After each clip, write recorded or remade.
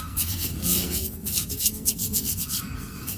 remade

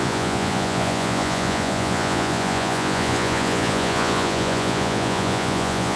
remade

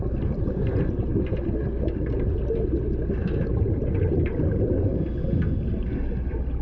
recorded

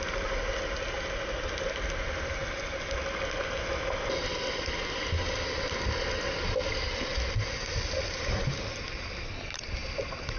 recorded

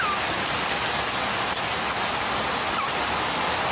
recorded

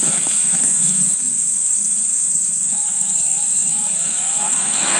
remade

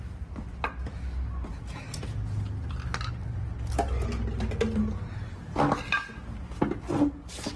recorded